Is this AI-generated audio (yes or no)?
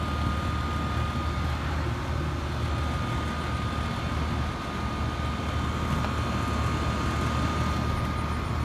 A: no